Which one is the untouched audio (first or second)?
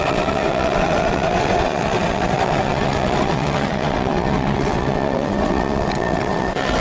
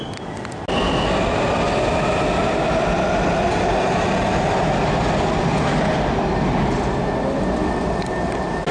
second